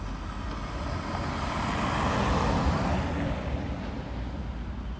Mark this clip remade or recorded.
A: recorded